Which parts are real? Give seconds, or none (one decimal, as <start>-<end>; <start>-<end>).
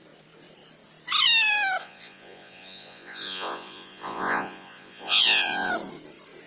0.0-1.8; 5.7-6.5